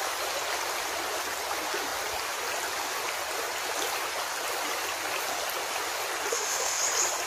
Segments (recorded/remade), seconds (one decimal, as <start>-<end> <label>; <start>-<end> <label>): 0.0-6.3 recorded; 6.3-6.8 remade; 6.8-7.3 recorded